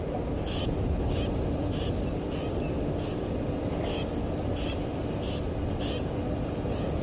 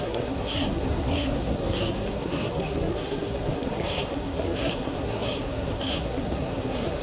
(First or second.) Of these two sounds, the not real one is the second